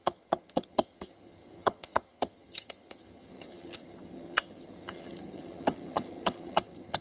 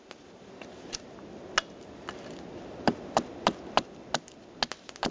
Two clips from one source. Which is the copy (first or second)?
first